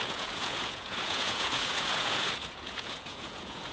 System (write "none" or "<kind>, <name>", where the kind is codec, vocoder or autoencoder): vocoder, Vocos